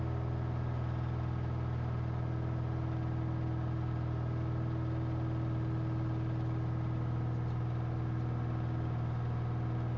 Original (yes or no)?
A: yes